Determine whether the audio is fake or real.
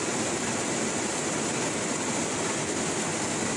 real